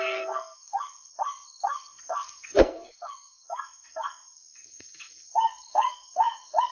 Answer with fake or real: fake